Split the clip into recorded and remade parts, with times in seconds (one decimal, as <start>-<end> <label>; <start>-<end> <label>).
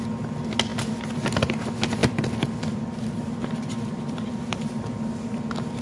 0.0-2.0 recorded; 2.0-4.6 remade; 4.6-5.8 recorded